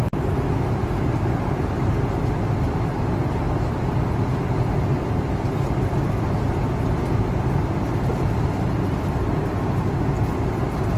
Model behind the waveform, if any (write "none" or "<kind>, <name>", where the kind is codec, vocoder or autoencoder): none